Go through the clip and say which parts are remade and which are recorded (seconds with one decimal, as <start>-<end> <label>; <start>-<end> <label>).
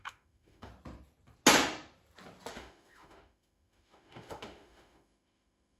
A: 0.0-0.7 remade; 0.7-2.5 recorded; 2.5-5.8 remade